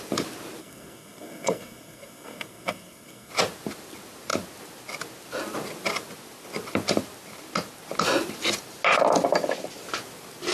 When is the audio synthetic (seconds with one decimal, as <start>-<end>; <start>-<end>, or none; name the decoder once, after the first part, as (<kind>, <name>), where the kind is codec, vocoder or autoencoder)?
0.6-3.3 (codec, SNAC)